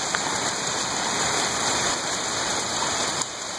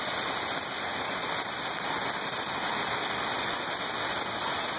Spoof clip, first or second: first